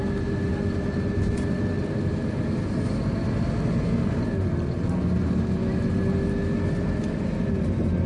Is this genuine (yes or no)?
yes